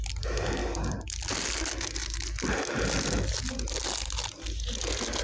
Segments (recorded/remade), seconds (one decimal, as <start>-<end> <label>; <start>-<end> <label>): 0.0-5.2 recorded